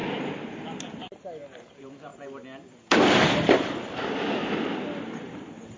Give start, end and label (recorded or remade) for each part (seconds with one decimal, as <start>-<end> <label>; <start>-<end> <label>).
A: 0.0-1.6 recorded; 1.6-2.1 remade; 2.1-5.1 recorded; 5.1-5.8 remade